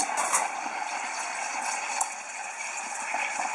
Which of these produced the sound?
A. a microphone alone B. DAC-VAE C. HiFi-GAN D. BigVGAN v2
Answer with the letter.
A